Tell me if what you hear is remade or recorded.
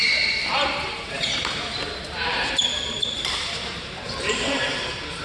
remade